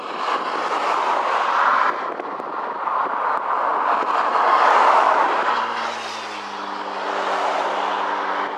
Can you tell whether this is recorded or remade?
recorded